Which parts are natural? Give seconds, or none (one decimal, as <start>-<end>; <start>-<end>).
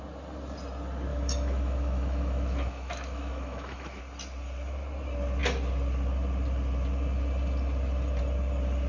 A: 0.0-1.1; 4.0-8.9